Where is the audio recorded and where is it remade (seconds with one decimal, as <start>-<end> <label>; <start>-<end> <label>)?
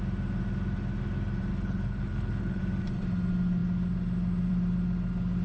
0.0-1.5 recorded; 1.5-2.6 remade; 2.6-5.4 recorded